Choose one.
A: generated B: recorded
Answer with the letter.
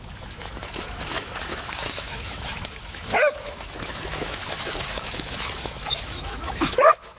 A